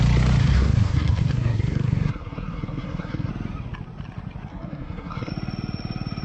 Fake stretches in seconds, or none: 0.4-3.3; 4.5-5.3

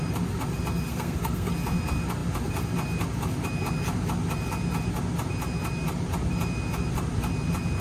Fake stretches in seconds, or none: 0.9-1.5

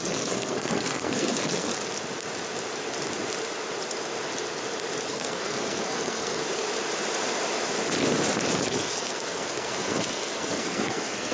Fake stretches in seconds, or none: 0.0-1.7; 5.1-6.4; 8.5-11.3